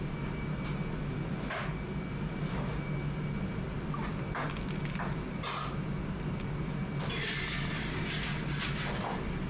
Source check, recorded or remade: recorded